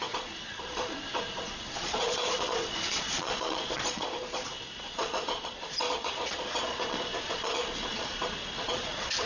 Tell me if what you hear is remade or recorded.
remade